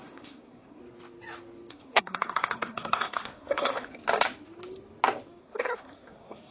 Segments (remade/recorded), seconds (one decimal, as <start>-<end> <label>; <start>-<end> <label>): 0.0-0.8 remade; 0.8-1.7 recorded; 1.7-4.0 remade; 4.0-5.4 recorded; 5.4-6.5 remade